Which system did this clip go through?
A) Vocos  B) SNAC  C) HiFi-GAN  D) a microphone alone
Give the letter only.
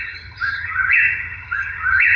C